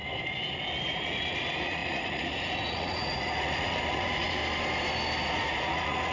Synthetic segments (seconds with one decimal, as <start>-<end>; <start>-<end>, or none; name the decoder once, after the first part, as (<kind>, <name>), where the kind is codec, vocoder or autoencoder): 0.8-4.4 (vocoder, Vocos); 5.3-6.1